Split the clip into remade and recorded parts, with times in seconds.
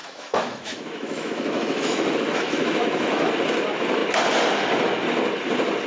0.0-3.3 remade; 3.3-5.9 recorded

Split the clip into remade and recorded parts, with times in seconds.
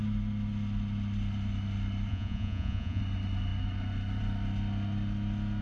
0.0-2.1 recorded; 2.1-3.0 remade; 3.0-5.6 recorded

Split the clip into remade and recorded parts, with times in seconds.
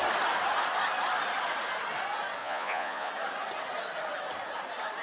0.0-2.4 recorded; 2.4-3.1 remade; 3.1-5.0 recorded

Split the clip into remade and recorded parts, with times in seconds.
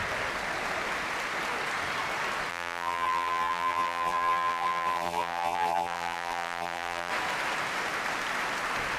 0.0-2.5 recorded; 2.5-7.1 remade; 7.1-9.0 recorded